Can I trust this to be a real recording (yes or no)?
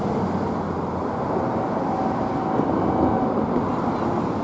yes